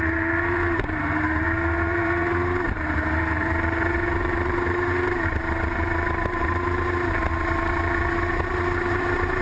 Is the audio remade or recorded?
remade